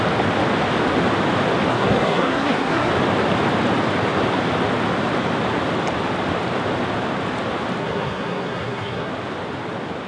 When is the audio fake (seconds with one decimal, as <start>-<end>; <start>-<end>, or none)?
1.7-2.9; 7.8-9.1